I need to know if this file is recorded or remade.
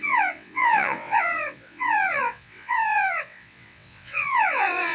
remade